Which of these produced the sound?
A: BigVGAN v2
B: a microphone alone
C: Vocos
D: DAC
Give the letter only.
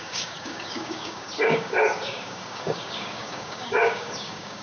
D